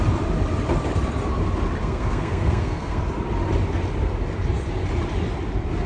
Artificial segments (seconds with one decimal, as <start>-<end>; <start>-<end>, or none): 1.8-3.0